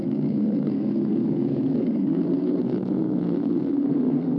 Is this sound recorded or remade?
remade